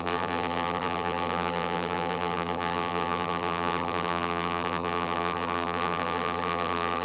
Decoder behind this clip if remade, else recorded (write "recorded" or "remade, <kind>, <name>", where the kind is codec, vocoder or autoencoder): remade, vocoder, BigVGAN v2